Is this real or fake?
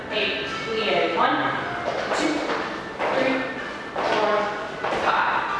real